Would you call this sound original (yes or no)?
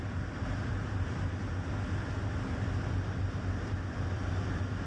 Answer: yes